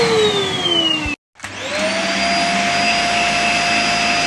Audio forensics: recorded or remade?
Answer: recorded